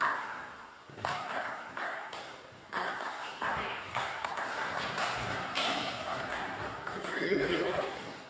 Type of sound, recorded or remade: remade